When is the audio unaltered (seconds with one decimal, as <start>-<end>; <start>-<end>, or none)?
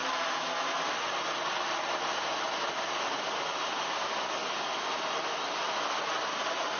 0.0-6.8